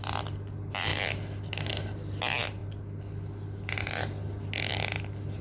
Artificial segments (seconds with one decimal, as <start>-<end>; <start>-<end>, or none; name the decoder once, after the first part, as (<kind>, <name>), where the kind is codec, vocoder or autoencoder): none